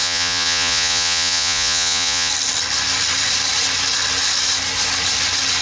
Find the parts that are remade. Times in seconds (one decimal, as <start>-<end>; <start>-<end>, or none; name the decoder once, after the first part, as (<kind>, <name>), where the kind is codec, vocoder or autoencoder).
0.0-2.3 (vocoder, Vocos)